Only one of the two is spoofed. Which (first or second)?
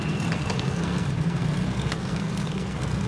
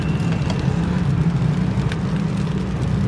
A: first